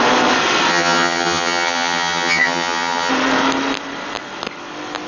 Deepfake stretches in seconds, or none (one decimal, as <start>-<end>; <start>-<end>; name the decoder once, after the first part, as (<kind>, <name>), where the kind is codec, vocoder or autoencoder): 0.7-3.1 (vocoder, HiFi-GAN)